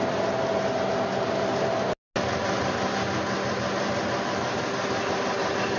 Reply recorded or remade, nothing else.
recorded